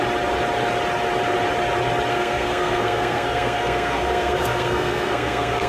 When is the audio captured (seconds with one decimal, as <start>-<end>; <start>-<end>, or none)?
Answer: 0.0-2.1